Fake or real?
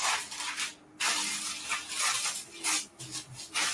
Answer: real